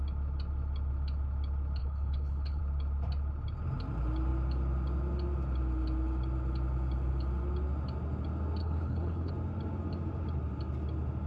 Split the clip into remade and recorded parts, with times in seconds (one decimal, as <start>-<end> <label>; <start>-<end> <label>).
0.0-1.8 recorded; 1.8-2.6 remade; 2.6-8.6 recorded; 8.6-9.3 remade; 9.3-11.3 recorded